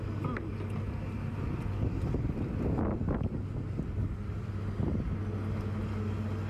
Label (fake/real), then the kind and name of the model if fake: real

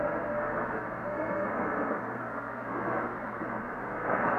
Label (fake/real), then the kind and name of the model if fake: fake, codec, SNAC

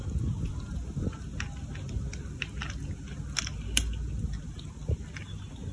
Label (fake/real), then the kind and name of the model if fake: real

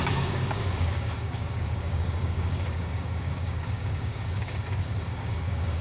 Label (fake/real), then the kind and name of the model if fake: fake, codec, DAC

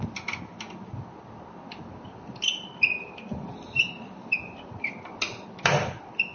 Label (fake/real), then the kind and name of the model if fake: real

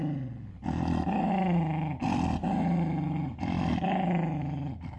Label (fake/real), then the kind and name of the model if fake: real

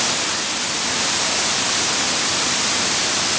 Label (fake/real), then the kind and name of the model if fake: real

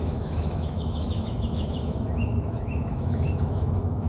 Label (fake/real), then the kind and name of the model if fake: fake, autoencoder, DAC-VAE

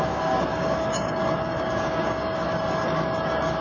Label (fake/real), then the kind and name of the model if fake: fake, codec, DAC